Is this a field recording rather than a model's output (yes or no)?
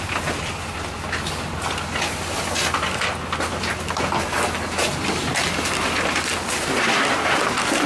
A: yes